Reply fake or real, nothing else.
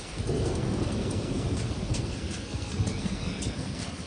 fake